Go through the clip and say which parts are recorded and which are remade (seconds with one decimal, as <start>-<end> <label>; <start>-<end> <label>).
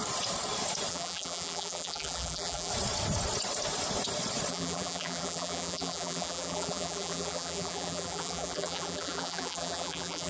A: 0.0-0.9 recorded; 0.9-2.7 remade; 2.7-4.5 recorded; 4.5-10.3 remade